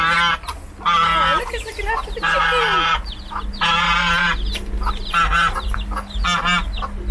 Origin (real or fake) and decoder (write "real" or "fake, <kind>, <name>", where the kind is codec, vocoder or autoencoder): real